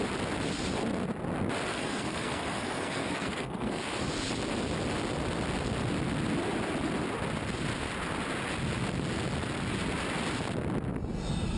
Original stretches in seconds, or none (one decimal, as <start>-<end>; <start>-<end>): 0.0-1.7; 3.8-11.6

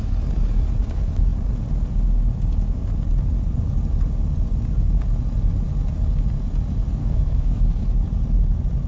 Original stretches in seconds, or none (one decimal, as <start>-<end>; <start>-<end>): 0.0-7.0; 7.6-8.9

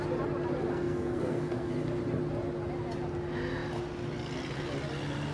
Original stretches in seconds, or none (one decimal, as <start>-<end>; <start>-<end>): 0.0-0.7; 1.7-5.3

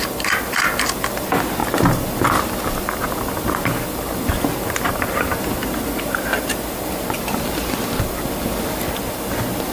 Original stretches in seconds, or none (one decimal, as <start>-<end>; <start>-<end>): 0.0-9.7

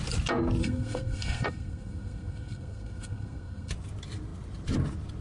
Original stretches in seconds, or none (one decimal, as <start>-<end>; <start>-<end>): 0.0-0.6; 3.7-5.2

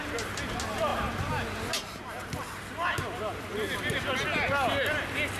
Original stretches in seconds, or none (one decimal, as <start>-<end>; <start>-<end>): 0.0-5.4

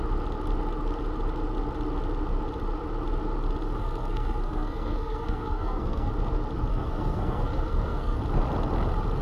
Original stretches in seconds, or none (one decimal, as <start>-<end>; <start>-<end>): 0.0-3.8; 6.1-6.7; 8.2-9.2